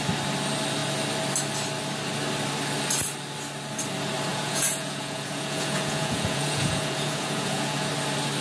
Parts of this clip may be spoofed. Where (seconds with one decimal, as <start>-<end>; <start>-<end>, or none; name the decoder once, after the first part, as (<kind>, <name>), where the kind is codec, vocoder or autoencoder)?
4.3-7.9 (vocoder, Vocos)